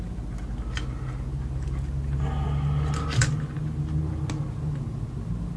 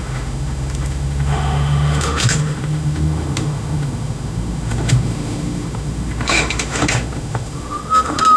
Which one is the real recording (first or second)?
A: first